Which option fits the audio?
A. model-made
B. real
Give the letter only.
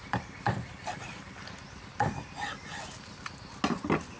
B